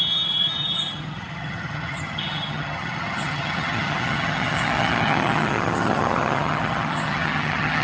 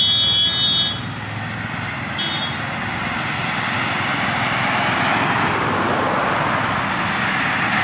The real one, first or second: second